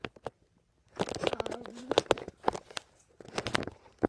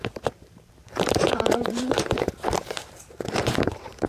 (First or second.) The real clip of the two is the first